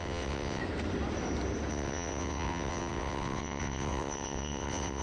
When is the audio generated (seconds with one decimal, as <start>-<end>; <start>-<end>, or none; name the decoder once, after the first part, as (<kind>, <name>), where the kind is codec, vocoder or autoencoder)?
0.0-0.6 (vocoder, WaveNeXt); 1.7-5.0